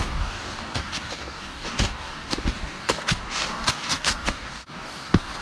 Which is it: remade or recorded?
remade